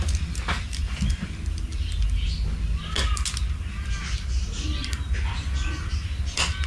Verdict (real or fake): real